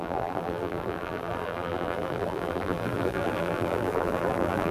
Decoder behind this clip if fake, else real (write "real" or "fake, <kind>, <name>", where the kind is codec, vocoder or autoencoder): fake, vocoder, BigVGAN v2